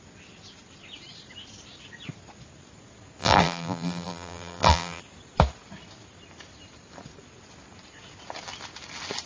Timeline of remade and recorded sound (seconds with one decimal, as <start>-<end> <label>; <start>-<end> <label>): 0.0-3.2 recorded; 3.2-5.0 remade; 5.0-9.3 recorded